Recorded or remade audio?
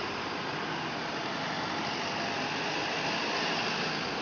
recorded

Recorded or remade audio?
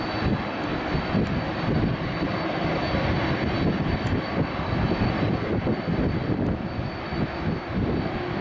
recorded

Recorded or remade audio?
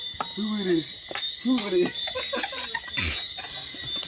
recorded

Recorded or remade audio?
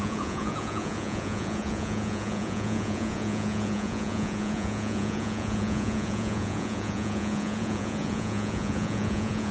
remade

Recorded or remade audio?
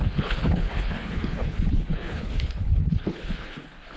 remade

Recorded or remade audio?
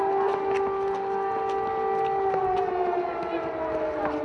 recorded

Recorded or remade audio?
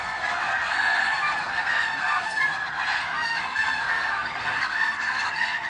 remade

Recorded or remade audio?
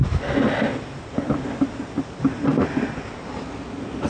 recorded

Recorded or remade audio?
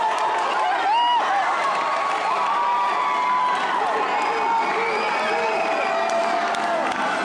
recorded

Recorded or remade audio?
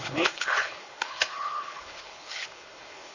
remade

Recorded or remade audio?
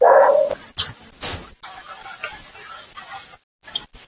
recorded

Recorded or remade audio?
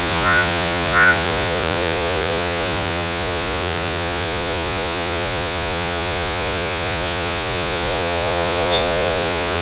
remade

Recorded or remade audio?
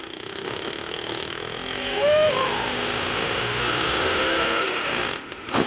remade